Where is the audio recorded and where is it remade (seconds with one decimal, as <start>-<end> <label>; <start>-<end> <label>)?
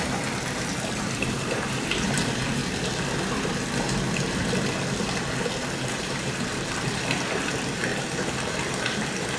0.0-2.6 remade; 2.6-6.0 recorded; 6.0-9.4 remade